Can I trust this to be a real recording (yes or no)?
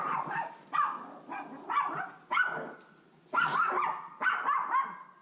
yes